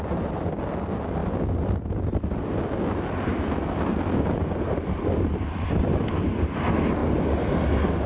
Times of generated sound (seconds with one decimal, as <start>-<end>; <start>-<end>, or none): none